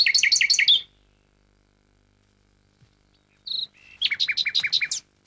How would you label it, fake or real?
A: real